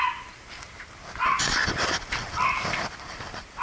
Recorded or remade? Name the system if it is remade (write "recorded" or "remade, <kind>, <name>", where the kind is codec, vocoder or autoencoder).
recorded